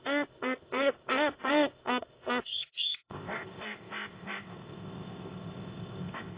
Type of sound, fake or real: fake